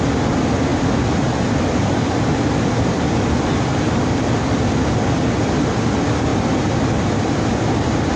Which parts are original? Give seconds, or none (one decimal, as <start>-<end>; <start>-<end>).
0.0-8.2